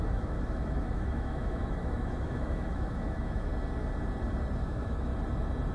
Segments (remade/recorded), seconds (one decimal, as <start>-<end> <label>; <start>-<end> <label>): 0.0-3.5 remade; 3.5-4.6 recorded; 4.6-5.1 remade; 5.1-5.7 recorded